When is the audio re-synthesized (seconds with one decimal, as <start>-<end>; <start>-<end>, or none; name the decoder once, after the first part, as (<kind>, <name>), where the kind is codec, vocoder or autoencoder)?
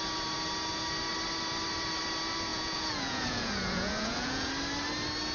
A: 2.5-4.5 (vocoder, Vocos)